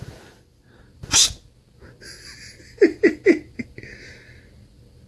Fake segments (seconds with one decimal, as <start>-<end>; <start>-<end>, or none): none